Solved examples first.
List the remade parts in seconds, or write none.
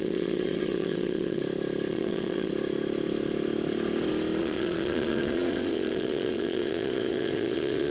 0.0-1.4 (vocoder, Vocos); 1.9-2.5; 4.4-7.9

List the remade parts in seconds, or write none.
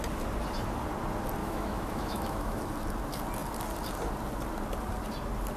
1.4-2.6 (autoencoder, DAC-VAE)